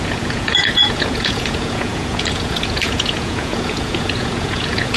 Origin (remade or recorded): remade